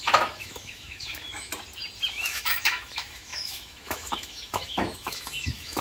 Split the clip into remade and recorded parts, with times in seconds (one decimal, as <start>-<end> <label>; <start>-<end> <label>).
0.0-1.5 remade; 1.5-2.1 recorded; 2.1-5.8 remade